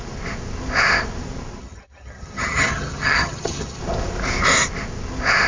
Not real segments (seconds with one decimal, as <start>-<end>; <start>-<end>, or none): 1.6-3.8